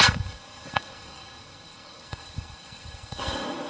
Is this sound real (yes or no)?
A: no